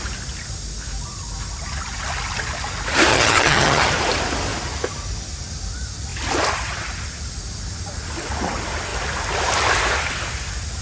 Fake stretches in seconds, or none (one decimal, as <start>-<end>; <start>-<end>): 3.1-3.9